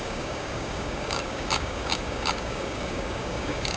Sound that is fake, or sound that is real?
fake